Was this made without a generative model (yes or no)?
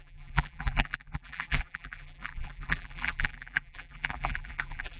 no